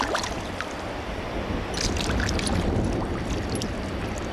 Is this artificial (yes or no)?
no